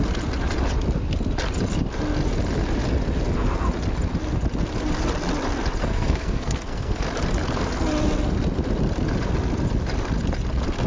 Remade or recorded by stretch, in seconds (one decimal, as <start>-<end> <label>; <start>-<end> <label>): 0.0-5.8 recorded; 5.8-7.0 remade; 7.0-10.9 recorded